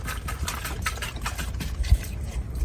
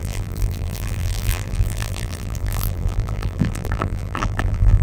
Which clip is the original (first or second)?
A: first